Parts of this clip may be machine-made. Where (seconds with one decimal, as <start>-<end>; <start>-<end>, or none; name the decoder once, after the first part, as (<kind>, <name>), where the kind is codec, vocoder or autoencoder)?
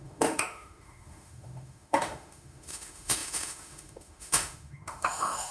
0.0-5.5 (autoencoder, DAC-VAE)